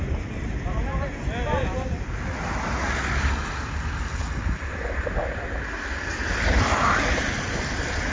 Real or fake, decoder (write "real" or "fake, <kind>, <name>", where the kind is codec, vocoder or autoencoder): real